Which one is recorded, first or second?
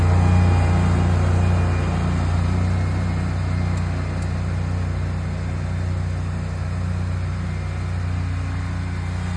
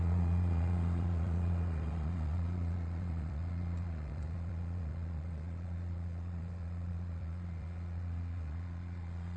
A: first